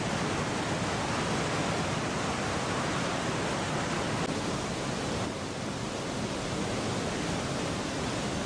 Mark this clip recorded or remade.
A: recorded